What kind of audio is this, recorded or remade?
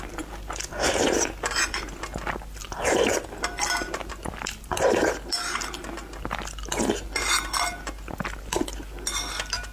recorded